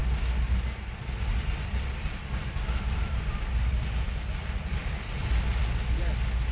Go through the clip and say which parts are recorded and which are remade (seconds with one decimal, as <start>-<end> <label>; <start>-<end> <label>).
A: 0.0-6.5 recorded